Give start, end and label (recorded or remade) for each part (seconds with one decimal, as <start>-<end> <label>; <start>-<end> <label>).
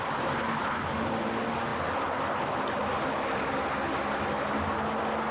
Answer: 0.0-5.3 recorded